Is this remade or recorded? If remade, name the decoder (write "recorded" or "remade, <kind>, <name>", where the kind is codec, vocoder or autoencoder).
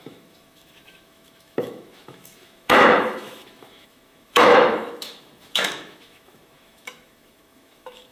remade, autoencoder, DAC-VAE